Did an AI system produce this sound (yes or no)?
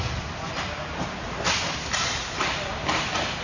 no